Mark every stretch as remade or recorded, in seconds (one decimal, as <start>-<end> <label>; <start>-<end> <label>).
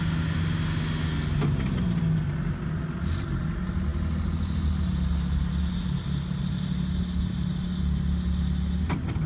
0.0-9.3 recorded